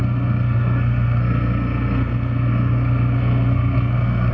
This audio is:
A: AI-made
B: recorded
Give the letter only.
A